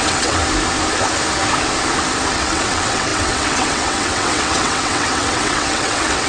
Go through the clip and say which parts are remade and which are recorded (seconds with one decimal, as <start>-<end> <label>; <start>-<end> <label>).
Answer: 0.0-0.4 remade; 0.4-2.3 recorded; 2.3-6.3 remade